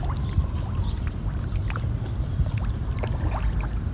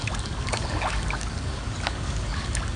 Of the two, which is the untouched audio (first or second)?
first